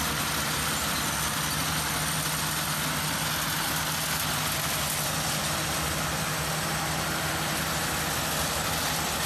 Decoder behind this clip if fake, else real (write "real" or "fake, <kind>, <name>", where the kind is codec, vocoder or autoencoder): real